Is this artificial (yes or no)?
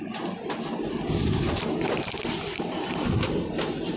no